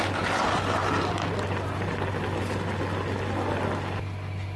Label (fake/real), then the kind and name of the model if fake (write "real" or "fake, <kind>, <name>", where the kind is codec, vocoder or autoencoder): real